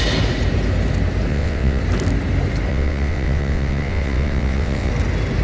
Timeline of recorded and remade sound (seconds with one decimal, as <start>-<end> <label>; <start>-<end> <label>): 0.0-1.3 recorded; 1.3-1.8 remade; 1.8-2.7 recorded; 2.7-4.9 remade; 4.9-5.4 recorded